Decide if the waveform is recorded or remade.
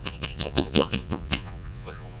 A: remade